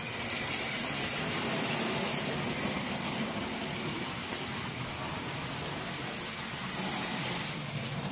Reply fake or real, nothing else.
real